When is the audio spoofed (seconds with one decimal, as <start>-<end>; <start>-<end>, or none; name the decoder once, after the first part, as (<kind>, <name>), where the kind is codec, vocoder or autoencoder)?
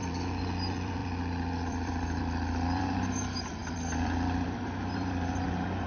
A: 0.0-5.9 (vocoder, BigVGAN v2)